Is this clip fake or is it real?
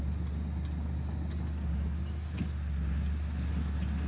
real